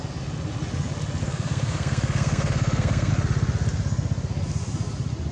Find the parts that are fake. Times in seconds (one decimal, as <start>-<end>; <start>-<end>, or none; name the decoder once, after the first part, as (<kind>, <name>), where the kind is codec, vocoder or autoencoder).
1.2-3.1 (codec, SNAC)